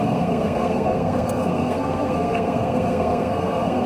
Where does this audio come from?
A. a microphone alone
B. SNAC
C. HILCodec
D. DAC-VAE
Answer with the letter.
B